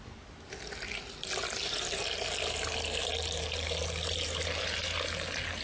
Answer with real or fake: real